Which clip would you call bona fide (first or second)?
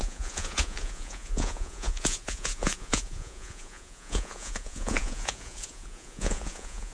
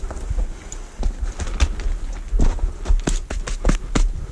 second